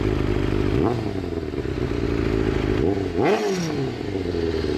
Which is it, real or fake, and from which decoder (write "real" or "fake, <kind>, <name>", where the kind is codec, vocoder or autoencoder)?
real